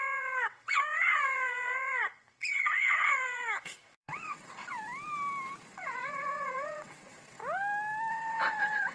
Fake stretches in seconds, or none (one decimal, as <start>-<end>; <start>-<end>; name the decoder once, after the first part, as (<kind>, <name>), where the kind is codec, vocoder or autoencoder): 0.0-4.7 (vocoder, WaveNeXt); 5.6-7.4; 8.1-8.9